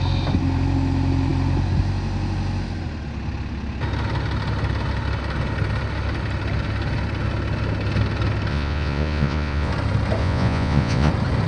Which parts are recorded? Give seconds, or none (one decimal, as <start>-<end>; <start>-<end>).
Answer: 0.0-8.5; 9.7-10.2; 11.1-11.5